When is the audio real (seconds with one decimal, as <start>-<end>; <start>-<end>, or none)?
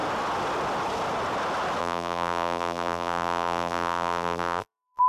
0.0-1.8